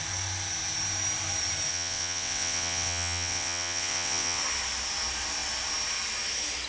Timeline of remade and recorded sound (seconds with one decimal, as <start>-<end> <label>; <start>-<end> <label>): 0.0-1.7 recorded; 1.7-4.4 remade; 4.4-6.7 recorded